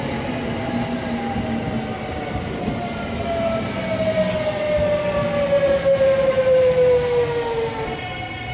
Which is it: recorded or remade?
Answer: recorded